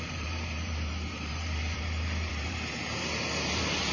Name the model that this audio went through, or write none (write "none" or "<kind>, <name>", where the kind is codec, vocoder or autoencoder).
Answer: vocoder, BigVGAN v2